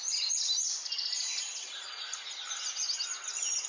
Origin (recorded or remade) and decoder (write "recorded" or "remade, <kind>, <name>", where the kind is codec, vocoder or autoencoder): recorded